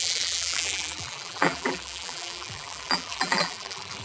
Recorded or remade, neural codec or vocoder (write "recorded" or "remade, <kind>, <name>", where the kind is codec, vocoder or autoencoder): remade, vocoder, BigVGAN v2